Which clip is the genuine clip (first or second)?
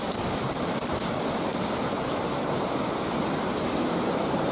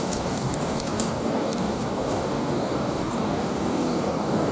first